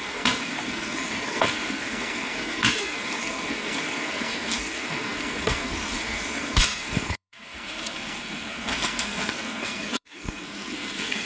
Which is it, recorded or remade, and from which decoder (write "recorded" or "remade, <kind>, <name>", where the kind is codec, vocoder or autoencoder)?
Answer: remade, codec, SNAC